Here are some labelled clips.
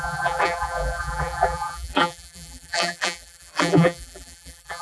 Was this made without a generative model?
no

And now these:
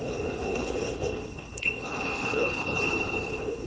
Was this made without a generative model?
no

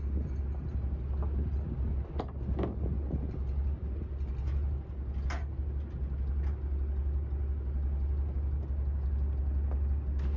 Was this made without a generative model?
yes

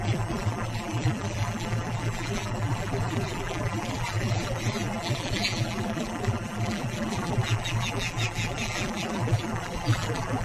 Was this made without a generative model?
no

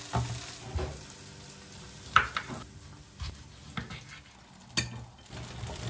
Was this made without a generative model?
yes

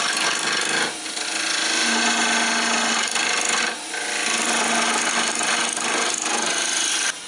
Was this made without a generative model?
yes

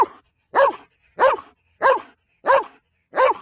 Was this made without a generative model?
yes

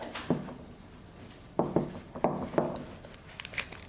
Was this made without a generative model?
yes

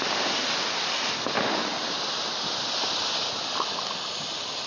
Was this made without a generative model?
yes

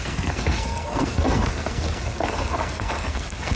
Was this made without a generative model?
no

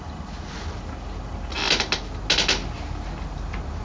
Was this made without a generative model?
yes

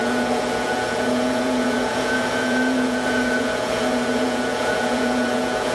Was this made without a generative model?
no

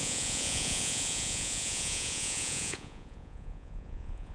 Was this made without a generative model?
no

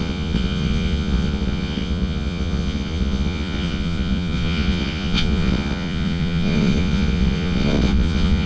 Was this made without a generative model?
no